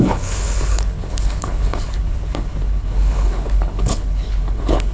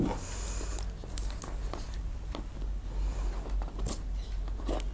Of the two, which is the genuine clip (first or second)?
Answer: second